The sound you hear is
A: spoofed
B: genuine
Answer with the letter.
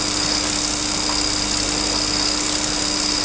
B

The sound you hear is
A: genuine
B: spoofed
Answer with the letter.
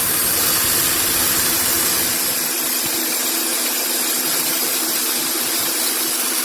A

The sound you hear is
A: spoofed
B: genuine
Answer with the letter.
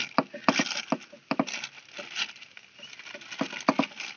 B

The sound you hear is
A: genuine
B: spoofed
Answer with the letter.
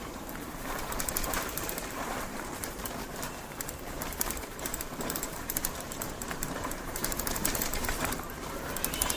B